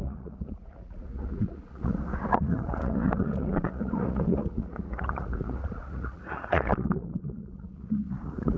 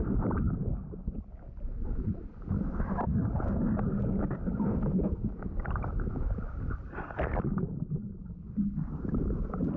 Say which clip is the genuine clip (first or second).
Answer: second